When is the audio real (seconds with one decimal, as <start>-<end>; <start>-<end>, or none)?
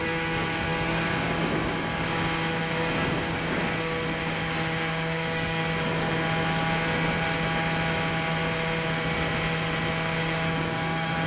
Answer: 1.9-2.6; 3.6-4.2; 5.6-10.2